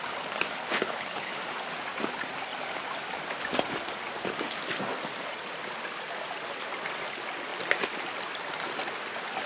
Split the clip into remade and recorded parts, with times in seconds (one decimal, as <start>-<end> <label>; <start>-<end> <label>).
0.0-0.6 recorded; 0.6-1.4 remade; 1.4-9.5 recorded